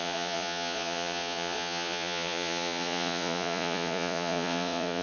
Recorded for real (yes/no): no